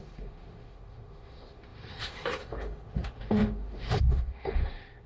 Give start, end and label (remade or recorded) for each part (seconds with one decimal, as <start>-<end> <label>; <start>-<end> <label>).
0.0-5.1 remade